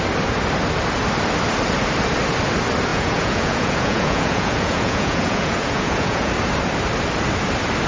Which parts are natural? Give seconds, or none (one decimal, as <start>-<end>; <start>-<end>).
0.0-2.9; 6.3-7.9